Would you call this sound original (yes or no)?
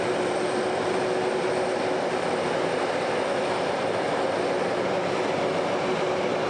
yes